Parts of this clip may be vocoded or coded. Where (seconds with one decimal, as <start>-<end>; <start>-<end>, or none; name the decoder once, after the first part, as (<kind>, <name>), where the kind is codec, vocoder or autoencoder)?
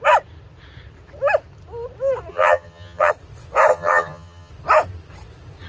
2.3-3.1 (vocoder, HiFi-GAN); 3.7-4.5